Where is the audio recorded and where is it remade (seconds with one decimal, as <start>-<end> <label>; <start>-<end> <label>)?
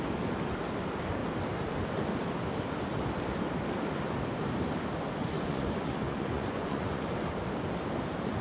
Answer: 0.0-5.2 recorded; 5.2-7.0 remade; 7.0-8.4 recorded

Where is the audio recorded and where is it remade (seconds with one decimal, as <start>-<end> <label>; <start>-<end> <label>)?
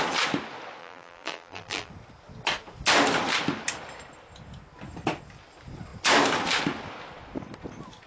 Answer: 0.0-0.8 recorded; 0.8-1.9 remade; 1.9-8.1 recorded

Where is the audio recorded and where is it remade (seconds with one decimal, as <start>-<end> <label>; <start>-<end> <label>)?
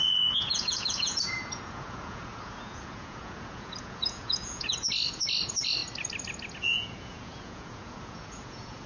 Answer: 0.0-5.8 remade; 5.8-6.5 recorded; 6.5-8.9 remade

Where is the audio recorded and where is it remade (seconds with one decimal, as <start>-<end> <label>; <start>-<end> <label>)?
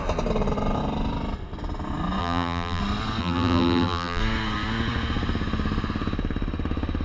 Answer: 0.0-2.2 recorded; 2.2-2.8 remade; 2.8-3.2 recorded; 3.2-4.2 remade; 4.2-7.0 recorded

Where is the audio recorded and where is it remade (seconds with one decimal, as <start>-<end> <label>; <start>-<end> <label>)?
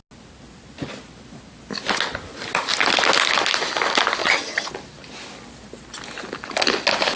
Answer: 0.0-4.2 recorded; 4.2-4.7 remade; 4.7-7.2 recorded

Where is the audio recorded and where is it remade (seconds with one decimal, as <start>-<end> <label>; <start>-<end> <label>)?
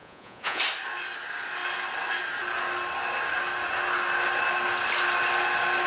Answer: 0.0-0.6 remade; 0.6-5.9 recorded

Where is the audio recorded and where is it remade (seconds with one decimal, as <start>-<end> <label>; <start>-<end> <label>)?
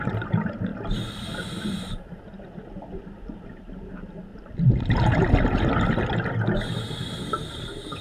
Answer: 0.0-0.7 remade; 0.7-1.7 recorded; 1.7-4.3 remade; 4.3-7.5 recorded; 7.5-8.0 remade